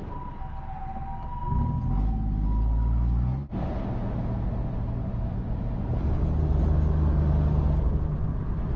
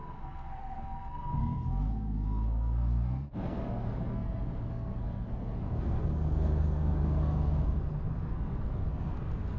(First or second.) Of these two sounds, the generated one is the second